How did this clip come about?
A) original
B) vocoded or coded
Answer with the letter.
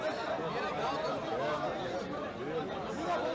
A